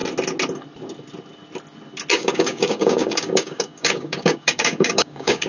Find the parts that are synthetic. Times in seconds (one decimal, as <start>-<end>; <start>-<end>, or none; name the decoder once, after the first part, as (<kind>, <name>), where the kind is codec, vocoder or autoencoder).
2.1-5.5 (codec, DAC)